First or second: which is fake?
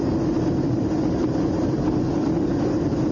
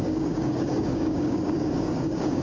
second